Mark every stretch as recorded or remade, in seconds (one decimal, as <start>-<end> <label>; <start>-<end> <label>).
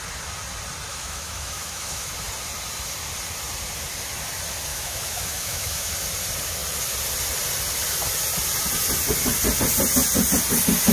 0.0-0.9 recorded; 0.9-2.1 remade; 2.1-4.7 recorded; 4.7-5.9 remade; 5.9-10.9 recorded